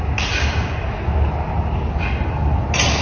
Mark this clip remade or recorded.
recorded